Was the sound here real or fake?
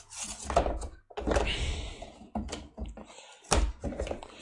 real